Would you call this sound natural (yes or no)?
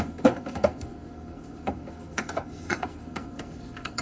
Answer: no